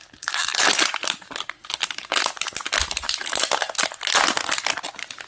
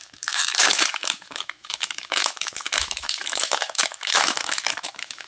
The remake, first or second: second